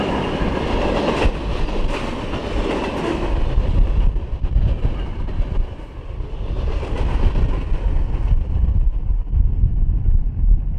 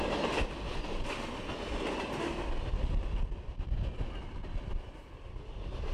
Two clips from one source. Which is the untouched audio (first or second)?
second